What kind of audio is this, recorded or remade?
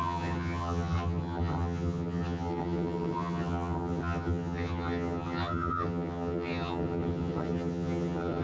remade